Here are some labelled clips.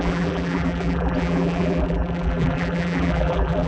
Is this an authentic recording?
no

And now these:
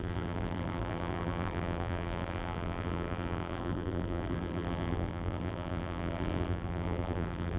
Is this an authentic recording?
no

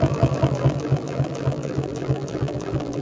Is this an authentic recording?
no